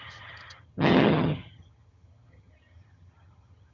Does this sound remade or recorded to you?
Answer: remade